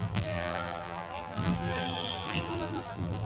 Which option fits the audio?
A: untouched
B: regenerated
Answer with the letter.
B